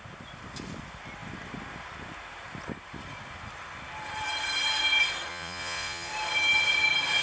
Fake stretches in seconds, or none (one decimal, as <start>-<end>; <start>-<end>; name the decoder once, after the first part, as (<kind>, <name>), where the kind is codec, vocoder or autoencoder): 5.3-6.1 (vocoder, Vocos)